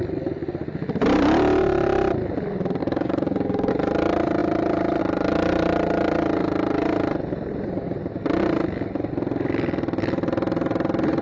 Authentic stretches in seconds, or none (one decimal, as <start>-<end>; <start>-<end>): 0.0-2.8; 3.7-11.2